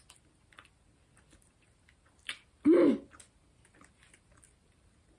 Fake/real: real